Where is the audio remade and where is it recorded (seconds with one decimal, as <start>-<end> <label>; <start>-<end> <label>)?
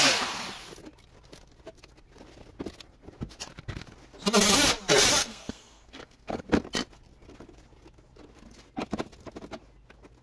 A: 0.0-5.2 recorded; 5.2-6.4 remade; 6.4-10.2 recorded